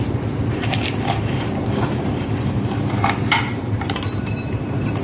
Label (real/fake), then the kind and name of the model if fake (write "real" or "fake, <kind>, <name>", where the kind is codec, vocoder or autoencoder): fake, vocoder, BigVGAN v2